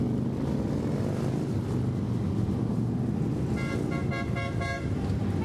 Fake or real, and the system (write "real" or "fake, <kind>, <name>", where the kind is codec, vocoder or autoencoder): real